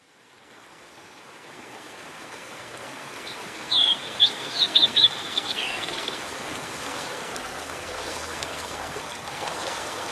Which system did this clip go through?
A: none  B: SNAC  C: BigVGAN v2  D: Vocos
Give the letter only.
B